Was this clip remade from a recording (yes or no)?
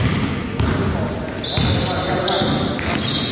no